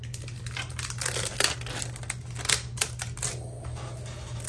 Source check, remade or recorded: recorded